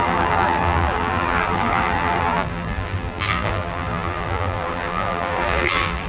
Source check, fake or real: fake